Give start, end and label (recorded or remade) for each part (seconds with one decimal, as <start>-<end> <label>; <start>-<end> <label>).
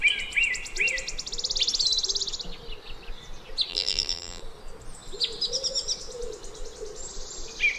0.0-3.7 recorded; 3.7-4.4 remade; 4.4-7.8 recorded